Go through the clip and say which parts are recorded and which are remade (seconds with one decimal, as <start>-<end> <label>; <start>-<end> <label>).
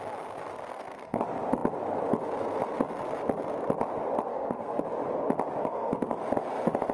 0.0-0.5 recorded; 0.5-1.2 remade; 1.2-4.3 recorded; 4.3-4.8 remade; 4.8-5.6 recorded; 5.6-6.2 remade; 6.2-6.9 recorded